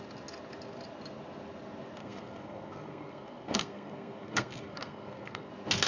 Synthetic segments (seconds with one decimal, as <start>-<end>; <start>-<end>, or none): 2.0-5.5